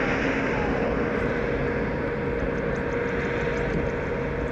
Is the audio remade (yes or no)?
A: no